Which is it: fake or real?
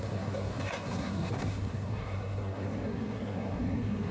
fake